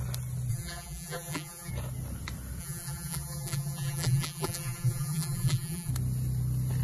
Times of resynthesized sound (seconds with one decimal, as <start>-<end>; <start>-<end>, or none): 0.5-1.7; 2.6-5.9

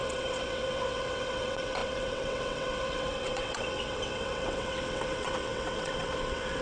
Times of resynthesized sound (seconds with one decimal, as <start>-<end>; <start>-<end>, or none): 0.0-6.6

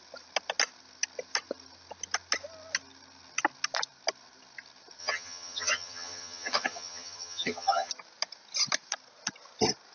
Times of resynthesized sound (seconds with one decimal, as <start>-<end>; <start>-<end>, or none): 5.0-7.9

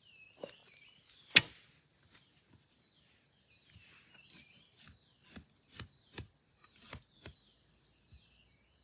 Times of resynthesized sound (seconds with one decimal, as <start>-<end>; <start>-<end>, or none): none